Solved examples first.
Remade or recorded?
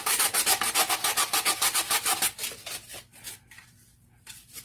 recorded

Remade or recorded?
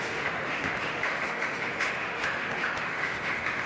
remade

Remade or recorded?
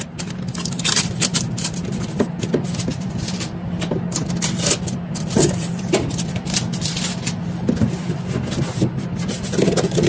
remade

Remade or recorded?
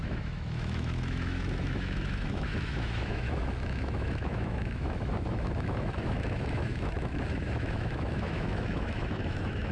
remade